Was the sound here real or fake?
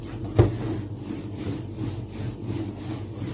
real